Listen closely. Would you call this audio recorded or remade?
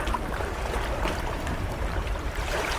remade